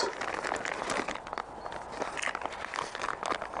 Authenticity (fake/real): real